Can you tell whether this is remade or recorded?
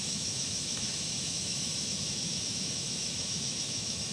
remade